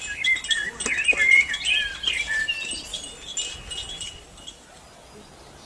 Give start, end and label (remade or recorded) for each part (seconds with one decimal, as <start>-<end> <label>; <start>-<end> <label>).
0.0-5.7 recorded